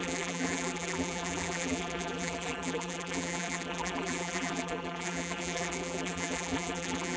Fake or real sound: fake